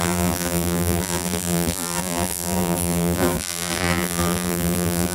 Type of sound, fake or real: fake